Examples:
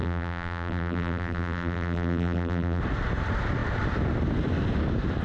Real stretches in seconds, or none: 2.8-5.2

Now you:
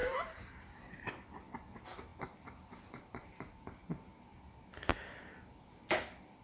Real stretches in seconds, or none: 0.0-0.5; 3.8-4.9

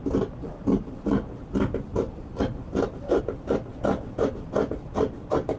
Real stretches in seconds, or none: 0.0-0.4; 1.4-1.9; 3.2-5.6

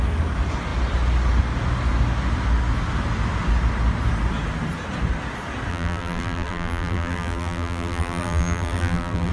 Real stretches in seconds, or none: 0.0-5.7

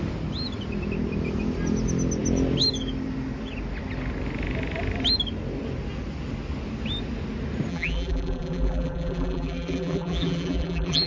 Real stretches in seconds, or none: 0.0-7.7

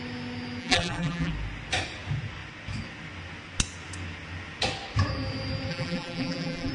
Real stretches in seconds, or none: 0.0-0.6; 1.3-5.7